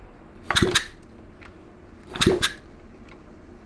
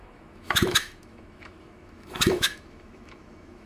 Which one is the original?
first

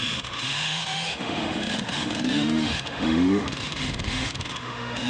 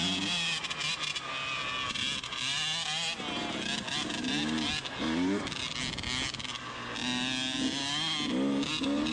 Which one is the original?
second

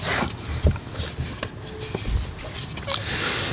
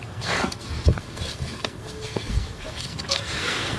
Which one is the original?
first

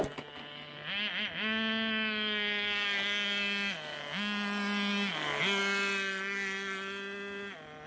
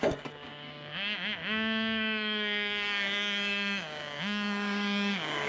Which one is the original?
first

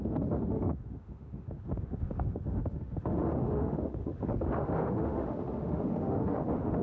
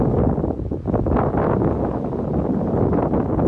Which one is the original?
second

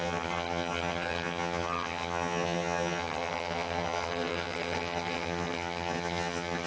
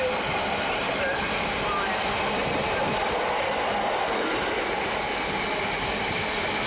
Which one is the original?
second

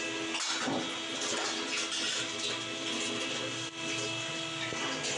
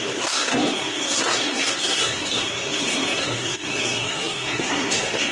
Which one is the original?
first